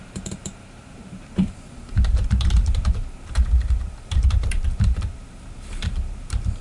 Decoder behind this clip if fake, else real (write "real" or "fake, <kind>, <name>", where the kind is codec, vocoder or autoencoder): fake, vocoder, BigVGAN v2